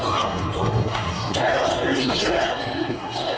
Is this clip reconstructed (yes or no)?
yes